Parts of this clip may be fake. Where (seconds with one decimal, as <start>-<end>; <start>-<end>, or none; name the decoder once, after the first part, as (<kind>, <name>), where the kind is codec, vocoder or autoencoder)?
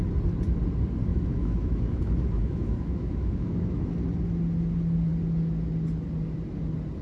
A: 1.1-3.9 (autoencoder, DAC-VAE)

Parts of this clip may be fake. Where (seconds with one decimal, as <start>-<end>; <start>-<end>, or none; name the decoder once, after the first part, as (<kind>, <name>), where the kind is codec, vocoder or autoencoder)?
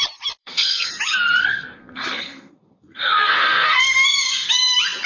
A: 0.4-0.9 (codec, SNAC); 1.4-4.5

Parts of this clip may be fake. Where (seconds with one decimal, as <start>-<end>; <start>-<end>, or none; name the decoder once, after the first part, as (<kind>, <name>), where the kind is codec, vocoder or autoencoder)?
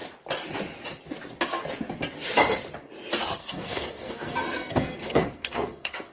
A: 3.4-6.1 (codec, SNAC)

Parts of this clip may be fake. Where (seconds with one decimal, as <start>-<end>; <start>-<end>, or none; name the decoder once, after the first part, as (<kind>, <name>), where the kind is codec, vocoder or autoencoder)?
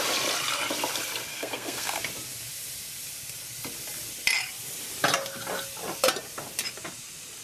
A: 1.3-2.0 (codec, SNAC)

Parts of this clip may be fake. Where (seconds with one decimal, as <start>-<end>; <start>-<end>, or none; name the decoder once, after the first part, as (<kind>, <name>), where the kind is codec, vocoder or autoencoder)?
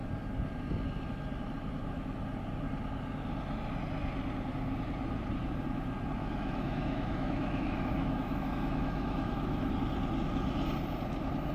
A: 6.2-9.7 (autoencoder, DAC-VAE)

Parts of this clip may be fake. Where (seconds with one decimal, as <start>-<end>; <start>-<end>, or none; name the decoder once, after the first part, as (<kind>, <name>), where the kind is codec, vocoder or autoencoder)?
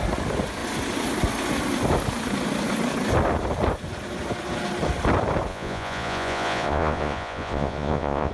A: 5.5-8.3 (vocoder, Vocos)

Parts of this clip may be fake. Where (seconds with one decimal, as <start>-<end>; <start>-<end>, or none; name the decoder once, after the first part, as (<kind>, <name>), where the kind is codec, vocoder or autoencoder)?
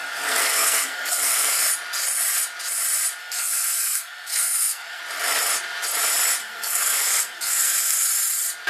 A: 0.0-1.6 (codec, SNAC); 3.2-5.0; 6.4-8.1